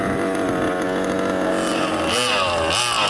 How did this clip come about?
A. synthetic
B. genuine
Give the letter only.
B